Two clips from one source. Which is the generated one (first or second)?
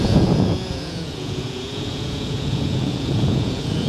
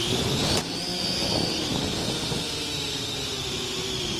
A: first